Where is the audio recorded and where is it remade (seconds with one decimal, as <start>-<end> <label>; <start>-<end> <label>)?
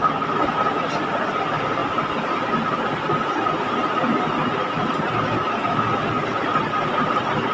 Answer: 0.0-1.8 recorded; 1.8-4.9 remade; 4.9-7.5 recorded